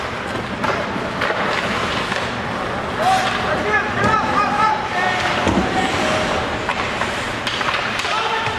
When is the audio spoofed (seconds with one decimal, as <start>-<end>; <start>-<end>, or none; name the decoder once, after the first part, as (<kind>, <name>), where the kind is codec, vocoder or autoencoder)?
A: 6.7-8.1 (vocoder, BigVGAN v2)